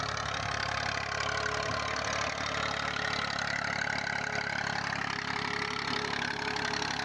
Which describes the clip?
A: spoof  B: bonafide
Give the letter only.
B